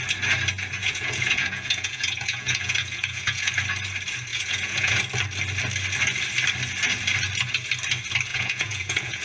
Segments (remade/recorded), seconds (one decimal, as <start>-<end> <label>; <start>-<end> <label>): 0.0-0.8 recorded; 0.8-3.5 remade; 3.5-4.3 recorded; 4.3-5.0 remade; 5.0-8.3 recorded; 8.3-9.2 remade